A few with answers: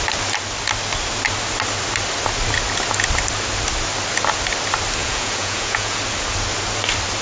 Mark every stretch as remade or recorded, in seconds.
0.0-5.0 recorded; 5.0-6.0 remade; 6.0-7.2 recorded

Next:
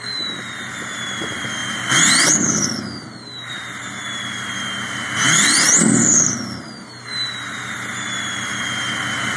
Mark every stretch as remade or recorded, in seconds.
0.0-9.4 recorded